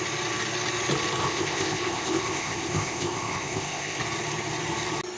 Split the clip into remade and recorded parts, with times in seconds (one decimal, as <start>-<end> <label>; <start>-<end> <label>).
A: 0.0-1.2 recorded; 1.2-4.0 remade; 4.0-5.2 recorded